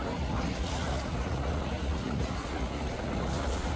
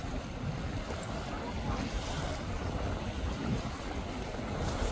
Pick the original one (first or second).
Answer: second